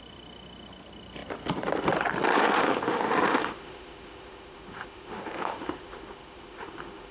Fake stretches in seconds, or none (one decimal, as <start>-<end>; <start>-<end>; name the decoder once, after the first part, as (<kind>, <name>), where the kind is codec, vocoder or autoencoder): 2.6-7.1 (autoencoder, DAC-VAE)